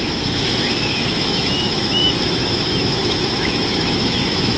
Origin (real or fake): fake